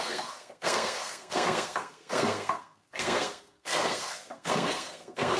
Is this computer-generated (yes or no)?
yes